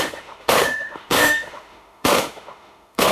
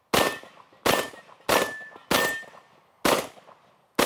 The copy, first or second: first